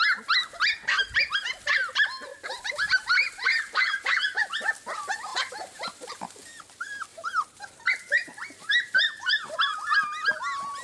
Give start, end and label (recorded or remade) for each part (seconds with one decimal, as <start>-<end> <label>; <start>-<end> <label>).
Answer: 0.0-2.3 recorded; 2.3-4.4 remade; 4.4-5.3 recorded; 5.3-6.1 remade; 6.1-7.1 recorded; 7.1-9.6 remade; 9.6-10.8 recorded